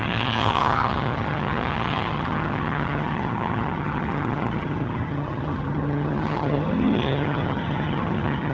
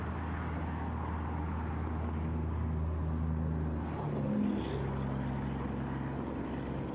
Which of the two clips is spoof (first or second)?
first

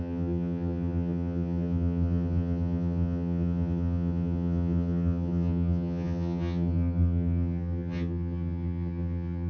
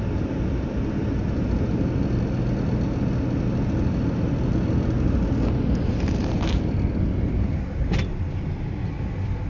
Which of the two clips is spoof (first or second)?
first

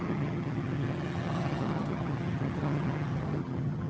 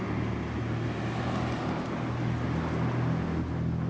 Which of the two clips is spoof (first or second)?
first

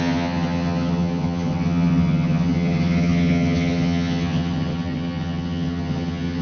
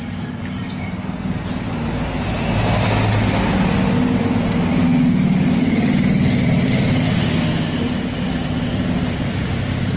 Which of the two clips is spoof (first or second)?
first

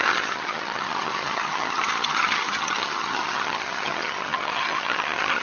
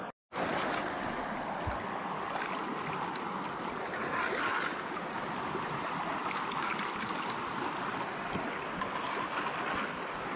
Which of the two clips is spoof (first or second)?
first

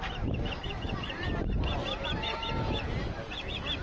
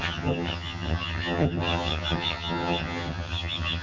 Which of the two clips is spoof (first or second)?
second